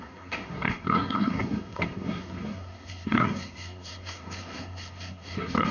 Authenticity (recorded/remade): remade